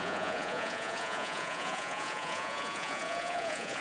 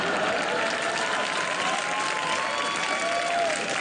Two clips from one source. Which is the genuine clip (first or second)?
second